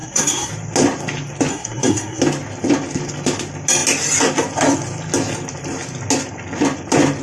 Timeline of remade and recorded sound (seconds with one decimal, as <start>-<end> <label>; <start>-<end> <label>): 0.0-0.5 remade; 0.5-1.5 recorded; 1.5-2.2 remade; 2.2-7.2 recorded